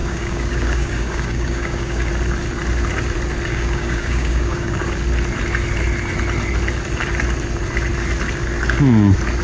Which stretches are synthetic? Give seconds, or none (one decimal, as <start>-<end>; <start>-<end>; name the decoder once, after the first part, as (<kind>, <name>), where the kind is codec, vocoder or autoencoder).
0.0-2.1 (codec, DAC); 3.5-4.8